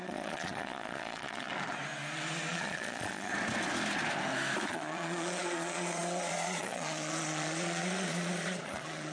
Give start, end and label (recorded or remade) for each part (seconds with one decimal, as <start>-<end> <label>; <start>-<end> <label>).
0.0-1.5 remade; 1.5-2.5 recorded; 2.5-3.3 remade; 3.3-4.7 recorded; 4.7-9.1 remade